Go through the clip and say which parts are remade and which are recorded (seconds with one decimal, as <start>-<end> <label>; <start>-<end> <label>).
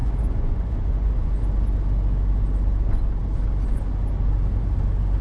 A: 0.0-1.4 remade; 1.4-5.2 recorded